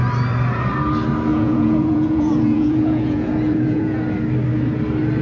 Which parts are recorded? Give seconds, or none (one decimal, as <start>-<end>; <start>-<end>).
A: 0.0-1.3; 4.0-5.2